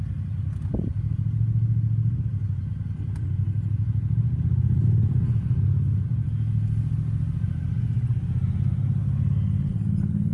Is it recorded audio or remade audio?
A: recorded